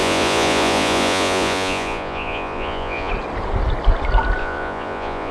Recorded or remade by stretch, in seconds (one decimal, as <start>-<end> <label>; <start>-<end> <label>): 0.0-3.1 remade; 3.1-4.4 recorded; 4.4-5.3 remade

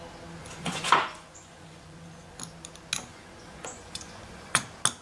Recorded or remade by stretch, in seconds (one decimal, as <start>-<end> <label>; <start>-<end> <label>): 0.0-0.4 recorded; 0.4-2.4 remade; 2.4-3.1 recorded; 3.1-4.6 remade; 4.6-5.0 recorded

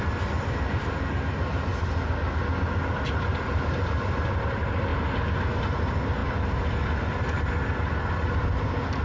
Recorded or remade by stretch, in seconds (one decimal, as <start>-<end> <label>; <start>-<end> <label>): 0.0-9.0 recorded

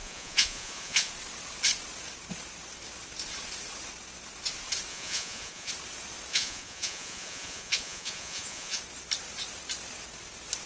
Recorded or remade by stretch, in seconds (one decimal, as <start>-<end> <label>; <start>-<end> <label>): 0.0-1.1 remade; 1.1-4.9 recorded; 4.9-5.7 remade; 5.7-6.3 recorded; 6.3-8.8 remade; 8.8-10.7 recorded

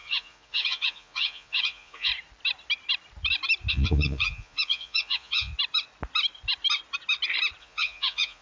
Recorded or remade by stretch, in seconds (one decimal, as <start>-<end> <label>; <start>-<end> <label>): 0.0-2.1 remade; 2.1-3.7 recorded; 3.7-5.5 remade; 5.5-7.6 recorded; 7.6-8.4 remade

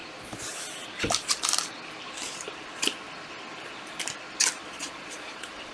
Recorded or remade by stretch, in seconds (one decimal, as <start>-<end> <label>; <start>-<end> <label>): 0.0-4.6 recorded; 4.6-5.7 remade

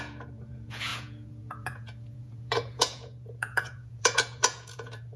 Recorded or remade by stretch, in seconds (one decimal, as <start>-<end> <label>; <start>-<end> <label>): 0.0-5.2 remade

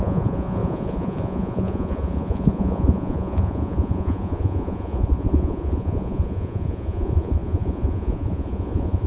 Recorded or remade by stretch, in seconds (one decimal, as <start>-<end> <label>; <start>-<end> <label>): 0.0-9.1 remade